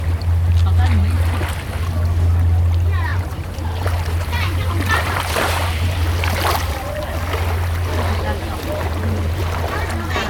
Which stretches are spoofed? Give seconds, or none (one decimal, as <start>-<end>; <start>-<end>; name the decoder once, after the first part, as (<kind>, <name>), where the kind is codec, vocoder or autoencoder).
3.1-6.0 (vocoder, BigVGAN v2); 8.8-9.4